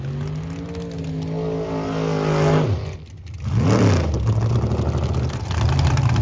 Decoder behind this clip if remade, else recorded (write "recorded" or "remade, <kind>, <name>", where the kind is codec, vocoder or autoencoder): recorded